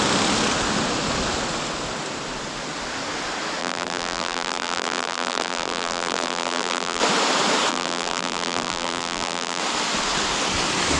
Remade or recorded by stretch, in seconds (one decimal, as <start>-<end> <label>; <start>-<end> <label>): 0.0-3.6 recorded; 3.6-7.0 remade; 7.0-7.7 recorded; 7.7-9.6 remade; 9.6-11.0 recorded